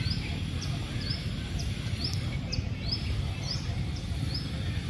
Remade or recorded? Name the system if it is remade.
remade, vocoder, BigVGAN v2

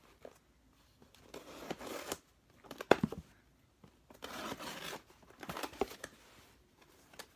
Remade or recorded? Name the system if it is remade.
recorded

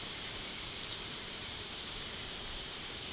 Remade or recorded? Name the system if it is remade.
remade, vocoder, BigVGAN v2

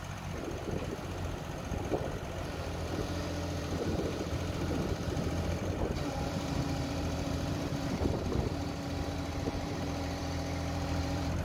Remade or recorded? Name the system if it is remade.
remade, vocoder, BigVGAN v2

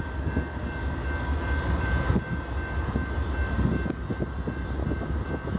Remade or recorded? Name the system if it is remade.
recorded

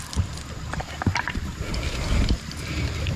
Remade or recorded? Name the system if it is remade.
recorded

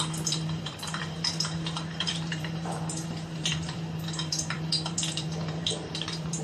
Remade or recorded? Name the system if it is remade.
remade, vocoder, BigVGAN v2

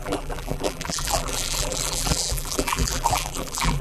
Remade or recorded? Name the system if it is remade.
remade, vocoder, BigVGAN v2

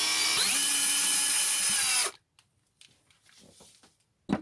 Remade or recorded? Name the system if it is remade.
recorded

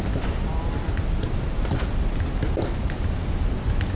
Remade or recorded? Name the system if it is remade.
recorded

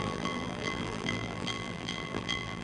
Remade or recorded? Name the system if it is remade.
remade, vocoder, BigVGAN v2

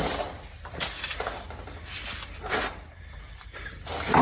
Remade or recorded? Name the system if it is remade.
remade, vocoder, BigVGAN v2